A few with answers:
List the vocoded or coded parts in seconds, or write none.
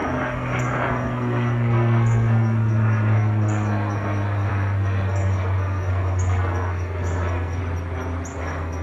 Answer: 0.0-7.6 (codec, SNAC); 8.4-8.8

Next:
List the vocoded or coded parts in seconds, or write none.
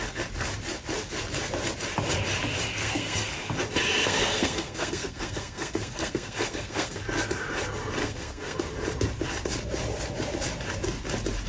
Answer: 2.7-3.3 (codec, SNAC); 4.0-7.0; 8.0-8.6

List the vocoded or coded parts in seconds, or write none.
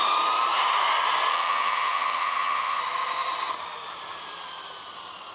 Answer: 1.3-2.8 (vocoder, HiFi-GAN)